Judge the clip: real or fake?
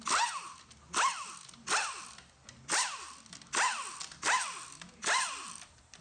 real